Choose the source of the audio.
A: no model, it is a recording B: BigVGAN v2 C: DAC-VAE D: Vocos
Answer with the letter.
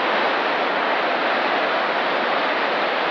A